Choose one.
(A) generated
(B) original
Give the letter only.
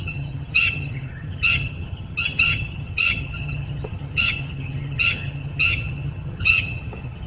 A